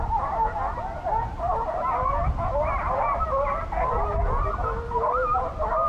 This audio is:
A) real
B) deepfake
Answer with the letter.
A